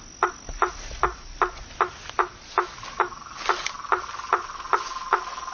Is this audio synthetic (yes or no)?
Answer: no